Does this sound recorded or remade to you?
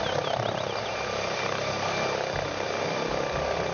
recorded